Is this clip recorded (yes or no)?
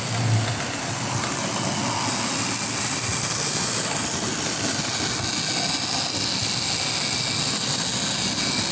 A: yes